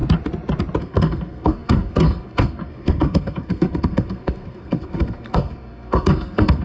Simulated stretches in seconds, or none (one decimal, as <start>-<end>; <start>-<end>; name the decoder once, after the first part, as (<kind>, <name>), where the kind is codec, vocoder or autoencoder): 0.8-6.6 (codec, SNAC)